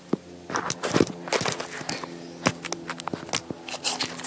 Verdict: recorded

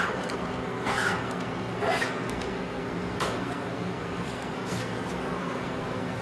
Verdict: remade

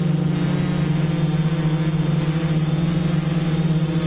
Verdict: recorded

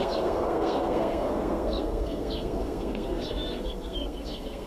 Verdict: remade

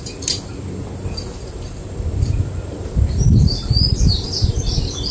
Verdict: remade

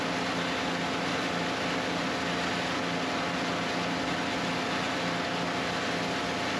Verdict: recorded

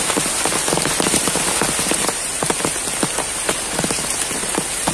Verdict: recorded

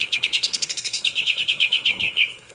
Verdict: remade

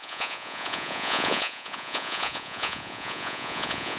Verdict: remade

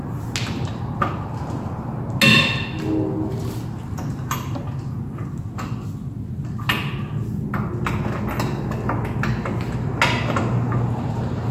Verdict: recorded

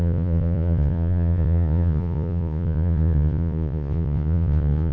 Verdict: remade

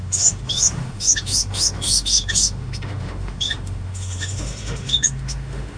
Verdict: remade